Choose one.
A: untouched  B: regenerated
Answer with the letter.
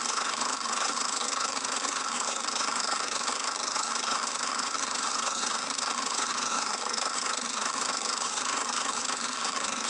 B